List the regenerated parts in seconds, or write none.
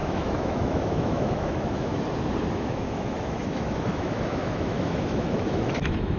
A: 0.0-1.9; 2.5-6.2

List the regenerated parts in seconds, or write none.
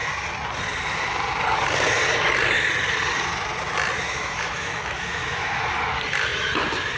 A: 4.0-5.7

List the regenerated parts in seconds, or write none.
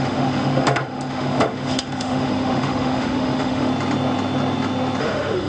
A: 0.0-3.7; 5.0-5.5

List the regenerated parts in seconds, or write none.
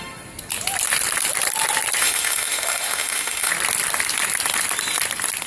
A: 2.0-3.5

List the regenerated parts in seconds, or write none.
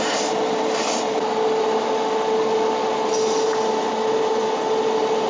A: none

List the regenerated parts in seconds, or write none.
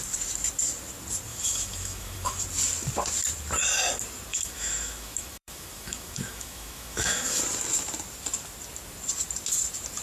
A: 1.3-2.4; 4.3-7.4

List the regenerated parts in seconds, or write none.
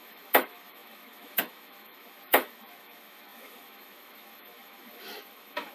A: 0.0-5.7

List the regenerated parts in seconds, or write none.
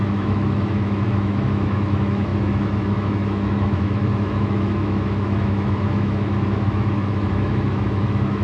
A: 0.0-8.4